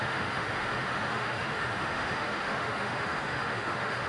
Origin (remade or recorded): remade